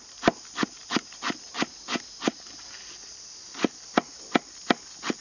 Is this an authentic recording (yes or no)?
yes